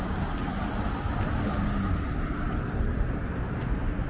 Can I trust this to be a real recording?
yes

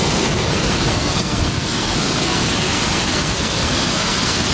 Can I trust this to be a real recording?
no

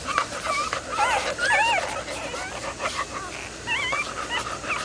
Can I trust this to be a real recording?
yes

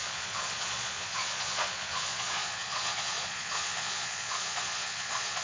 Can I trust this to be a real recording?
no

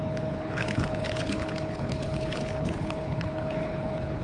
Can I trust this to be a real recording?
no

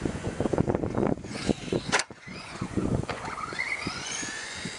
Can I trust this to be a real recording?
no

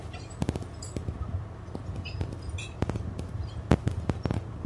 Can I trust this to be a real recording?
yes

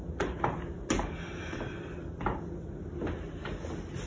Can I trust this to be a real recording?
yes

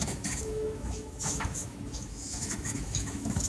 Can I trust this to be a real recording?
no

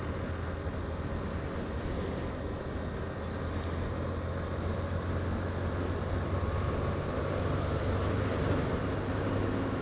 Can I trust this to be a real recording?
yes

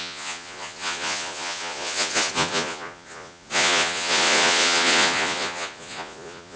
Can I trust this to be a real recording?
no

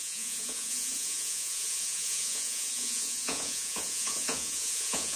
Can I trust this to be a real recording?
no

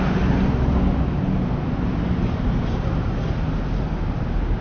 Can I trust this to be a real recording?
yes